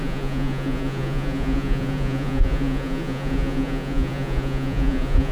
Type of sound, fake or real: fake